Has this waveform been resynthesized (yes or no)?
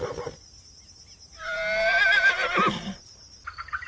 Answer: no